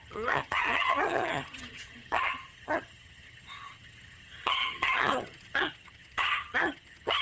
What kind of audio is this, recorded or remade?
remade